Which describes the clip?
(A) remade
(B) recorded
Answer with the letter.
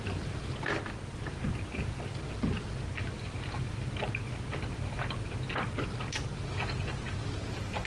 B